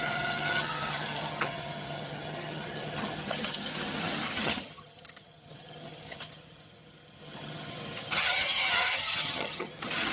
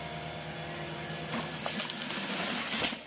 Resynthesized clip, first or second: first